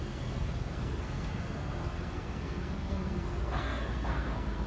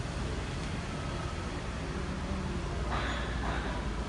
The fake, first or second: first